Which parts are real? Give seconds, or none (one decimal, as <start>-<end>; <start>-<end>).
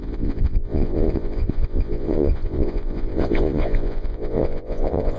none